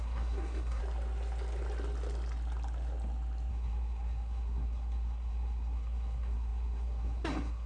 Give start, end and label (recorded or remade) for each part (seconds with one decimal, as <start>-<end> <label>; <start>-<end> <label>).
0.0-0.8 remade; 0.8-3.5 recorded; 3.5-7.7 remade